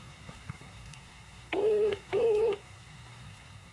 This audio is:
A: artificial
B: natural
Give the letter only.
A